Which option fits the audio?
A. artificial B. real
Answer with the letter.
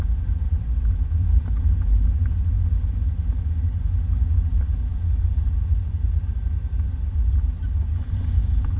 B